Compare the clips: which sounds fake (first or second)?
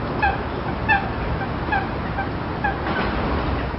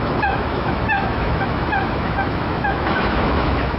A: second